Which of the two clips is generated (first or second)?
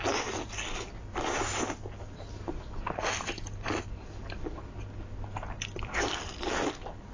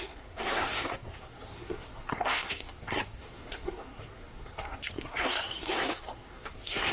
second